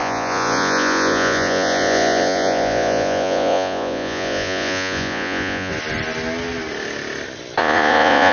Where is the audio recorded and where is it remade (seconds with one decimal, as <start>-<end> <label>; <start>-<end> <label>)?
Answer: 0.0-5.7 remade; 5.7-7.6 recorded; 7.6-8.3 remade